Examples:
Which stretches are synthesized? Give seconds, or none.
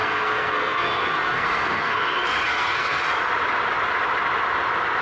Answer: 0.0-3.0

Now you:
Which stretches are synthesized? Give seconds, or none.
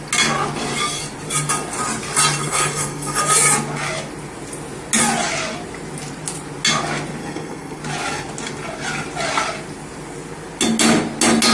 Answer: 2.5-3.2; 7.2-7.8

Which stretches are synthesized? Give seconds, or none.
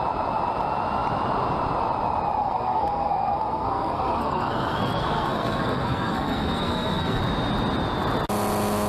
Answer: 2.4-7.2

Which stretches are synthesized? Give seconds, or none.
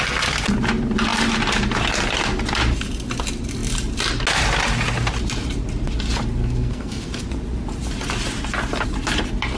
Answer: 6.4-7.2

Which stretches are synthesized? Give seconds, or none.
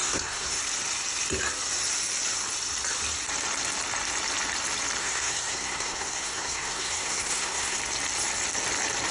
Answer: 0.0-0.6; 5.0-7.8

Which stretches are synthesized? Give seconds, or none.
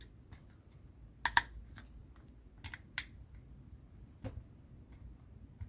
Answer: none